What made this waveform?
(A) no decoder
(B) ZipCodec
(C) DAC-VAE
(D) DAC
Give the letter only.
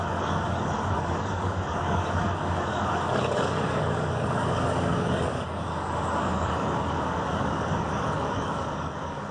D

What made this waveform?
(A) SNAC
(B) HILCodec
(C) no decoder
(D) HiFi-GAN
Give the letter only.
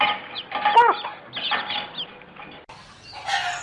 C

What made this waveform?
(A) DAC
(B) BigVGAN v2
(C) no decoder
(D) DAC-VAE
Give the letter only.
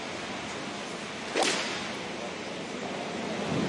C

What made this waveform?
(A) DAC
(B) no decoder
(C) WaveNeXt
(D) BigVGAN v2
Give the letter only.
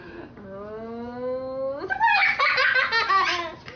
B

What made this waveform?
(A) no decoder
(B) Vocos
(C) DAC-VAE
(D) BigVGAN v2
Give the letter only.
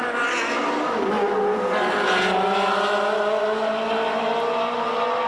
A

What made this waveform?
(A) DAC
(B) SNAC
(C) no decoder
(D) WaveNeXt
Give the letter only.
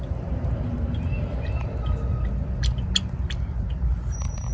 C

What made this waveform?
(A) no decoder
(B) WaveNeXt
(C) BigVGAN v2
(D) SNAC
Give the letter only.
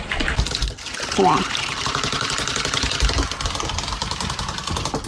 A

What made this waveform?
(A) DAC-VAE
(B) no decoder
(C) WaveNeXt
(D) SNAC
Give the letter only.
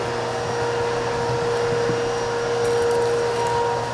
B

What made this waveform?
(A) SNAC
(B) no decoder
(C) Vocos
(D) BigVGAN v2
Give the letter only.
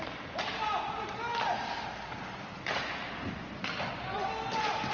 B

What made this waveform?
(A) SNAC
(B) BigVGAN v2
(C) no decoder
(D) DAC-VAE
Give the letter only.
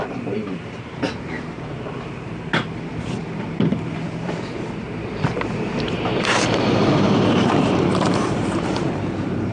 B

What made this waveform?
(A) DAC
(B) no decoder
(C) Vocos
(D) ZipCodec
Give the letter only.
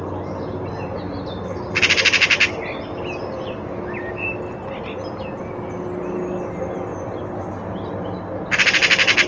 B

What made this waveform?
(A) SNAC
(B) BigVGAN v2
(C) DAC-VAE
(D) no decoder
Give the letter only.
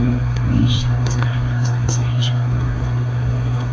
A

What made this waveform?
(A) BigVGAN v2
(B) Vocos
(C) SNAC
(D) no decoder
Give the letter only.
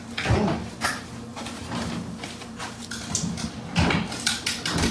D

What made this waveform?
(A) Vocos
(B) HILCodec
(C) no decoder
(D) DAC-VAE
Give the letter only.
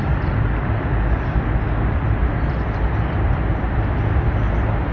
C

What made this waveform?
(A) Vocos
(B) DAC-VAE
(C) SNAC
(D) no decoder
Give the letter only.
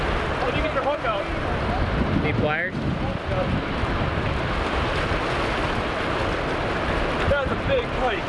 D